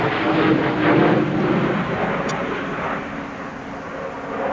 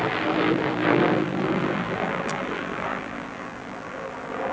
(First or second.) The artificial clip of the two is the second